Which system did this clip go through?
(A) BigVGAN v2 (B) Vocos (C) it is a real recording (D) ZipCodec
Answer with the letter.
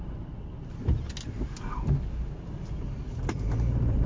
C